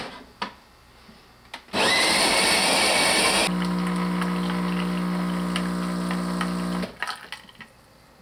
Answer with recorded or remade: recorded